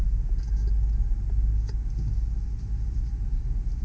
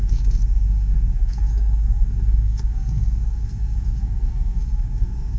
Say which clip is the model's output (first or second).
second